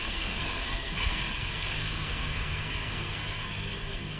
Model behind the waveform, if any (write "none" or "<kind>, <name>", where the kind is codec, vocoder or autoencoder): codec, SNAC